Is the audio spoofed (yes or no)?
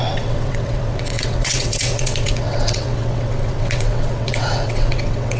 yes